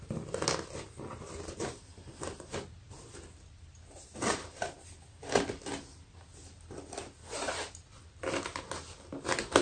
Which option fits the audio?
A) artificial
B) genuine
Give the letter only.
B